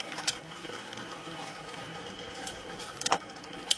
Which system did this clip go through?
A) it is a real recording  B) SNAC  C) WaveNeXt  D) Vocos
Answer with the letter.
B